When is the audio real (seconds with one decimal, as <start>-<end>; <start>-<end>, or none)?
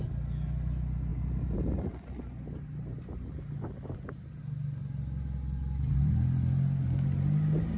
0.0-7.8